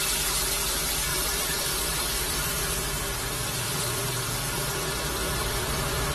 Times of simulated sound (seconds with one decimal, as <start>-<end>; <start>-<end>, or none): 1.1-4.8; 5.2-6.1